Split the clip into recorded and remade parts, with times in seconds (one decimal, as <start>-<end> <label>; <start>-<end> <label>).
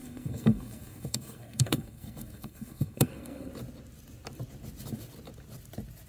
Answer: 0.0-3.5 remade; 3.5-6.1 recorded